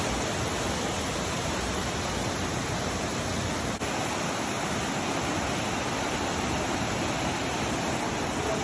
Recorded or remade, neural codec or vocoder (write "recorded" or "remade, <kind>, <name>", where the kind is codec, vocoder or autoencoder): recorded